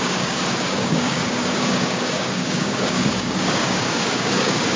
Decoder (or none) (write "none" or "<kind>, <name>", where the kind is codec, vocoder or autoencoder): codec, DAC